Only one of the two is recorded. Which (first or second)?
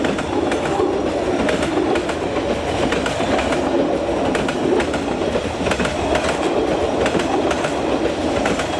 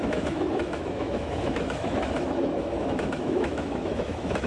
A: first